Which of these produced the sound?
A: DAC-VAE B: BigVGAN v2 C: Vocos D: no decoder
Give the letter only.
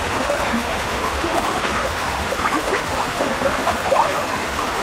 A